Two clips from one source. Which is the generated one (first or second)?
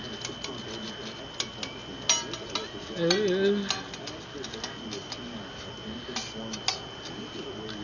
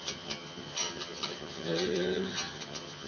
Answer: second